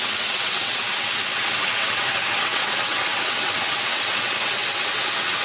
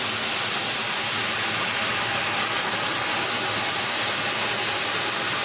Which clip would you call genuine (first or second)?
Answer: second